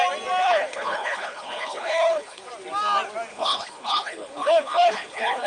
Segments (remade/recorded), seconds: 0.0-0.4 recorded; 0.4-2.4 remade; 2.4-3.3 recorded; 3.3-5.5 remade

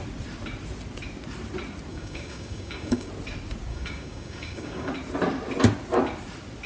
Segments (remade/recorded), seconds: 0.0-1.9 recorded; 1.9-3.1 remade; 3.1-3.7 recorded; 3.7-4.9 remade; 4.9-6.7 recorded

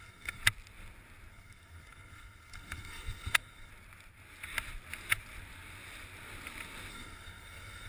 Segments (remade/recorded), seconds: 0.0-0.4 remade; 0.4-1.3 recorded; 1.3-3.7 remade; 3.7-6.9 recorded; 6.9-7.9 remade

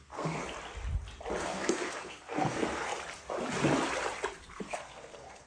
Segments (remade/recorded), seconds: 0.0-0.4 remade; 0.4-1.4 recorded; 1.4-2.9 remade; 2.9-4.4 recorded; 4.4-5.5 remade

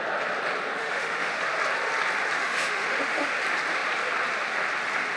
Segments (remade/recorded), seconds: 0.0-0.8 recorded; 0.8-1.4 remade; 1.4-2.4 recorded; 2.4-3.3 remade; 3.3-5.2 recorded

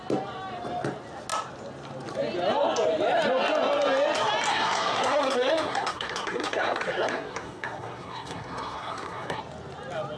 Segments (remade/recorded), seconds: 0.0-4.5 recorded; 4.5-9.4 remade; 9.4-10.2 recorded

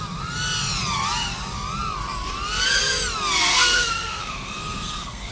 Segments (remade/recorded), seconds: 0.0-3.5 recorded; 3.5-5.3 remade